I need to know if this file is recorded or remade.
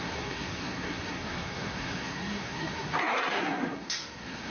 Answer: remade